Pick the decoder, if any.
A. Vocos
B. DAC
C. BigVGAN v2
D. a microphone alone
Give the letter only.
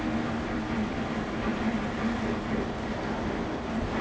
D